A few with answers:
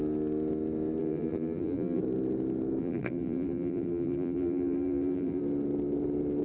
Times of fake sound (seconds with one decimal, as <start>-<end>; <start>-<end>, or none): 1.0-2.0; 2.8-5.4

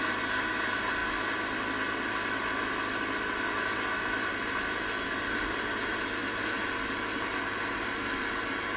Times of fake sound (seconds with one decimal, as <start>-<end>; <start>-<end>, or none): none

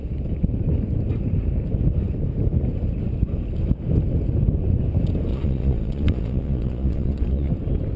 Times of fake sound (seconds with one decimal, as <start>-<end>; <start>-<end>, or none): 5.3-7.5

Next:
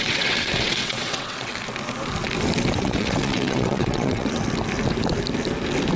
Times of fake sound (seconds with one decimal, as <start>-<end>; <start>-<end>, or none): 0.0-1.5; 2.7-4.4